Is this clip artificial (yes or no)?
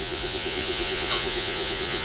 yes